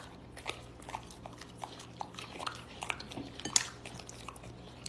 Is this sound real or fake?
real